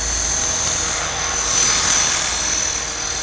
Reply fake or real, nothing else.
real